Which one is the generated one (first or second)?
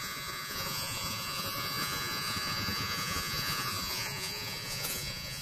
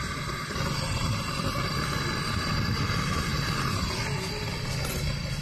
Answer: first